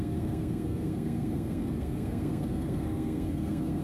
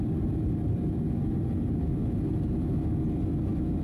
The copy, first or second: first